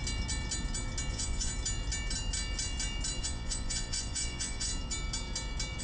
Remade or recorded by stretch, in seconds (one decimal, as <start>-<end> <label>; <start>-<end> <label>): 0.0-1.1 recorded; 1.1-1.5 remade; 1.5-3.2 recorded; 3.2-4.7 remade; 4.7-5.8 recorded